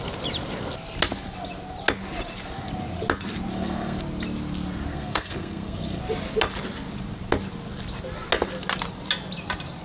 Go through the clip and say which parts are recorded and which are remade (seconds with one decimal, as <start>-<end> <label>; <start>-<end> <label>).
0.0-3.5 recorded; 3.5-4.0 remade; 4.0-4.9 recorded; 4.9-6.0 remade; 6.0-9.8 recorded

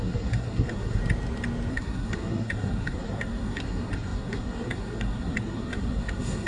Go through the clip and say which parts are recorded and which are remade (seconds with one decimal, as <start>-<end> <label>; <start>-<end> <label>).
0.0-1.0 remade; 1.0-1.7 recorded; 1.7-6.5 remade